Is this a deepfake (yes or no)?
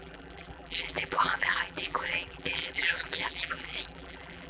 yes